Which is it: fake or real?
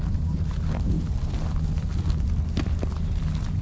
real